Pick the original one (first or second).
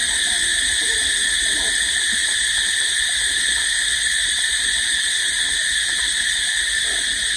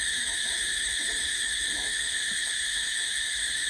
first